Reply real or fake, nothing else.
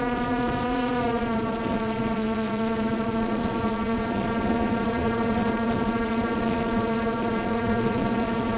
fake